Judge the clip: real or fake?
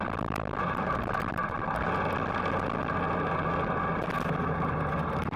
real